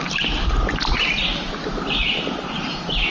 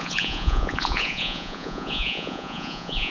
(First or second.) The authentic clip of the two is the first